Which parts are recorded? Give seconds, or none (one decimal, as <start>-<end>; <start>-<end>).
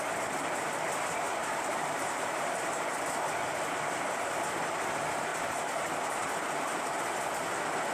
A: 0.0-1.4; 3.0-5.3; 6.9-7.9